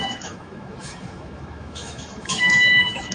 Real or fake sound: fake